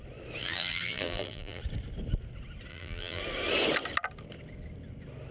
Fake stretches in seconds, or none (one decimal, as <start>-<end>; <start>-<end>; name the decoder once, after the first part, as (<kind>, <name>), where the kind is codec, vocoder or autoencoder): 0.4-1.6 (vocoder, BigVGAN v2); 2.7-3.2